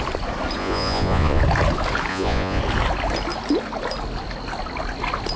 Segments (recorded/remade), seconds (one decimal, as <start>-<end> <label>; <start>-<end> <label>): 0.0-0.6 recorded; 0.6-1.4 remade; 1.4-2.1 recorded; 2.1-2.6 remade; 2.6-5.4 recorded